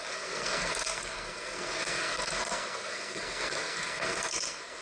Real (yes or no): no